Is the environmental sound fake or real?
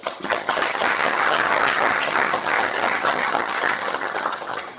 fake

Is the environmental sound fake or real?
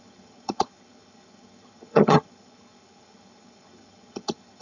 fake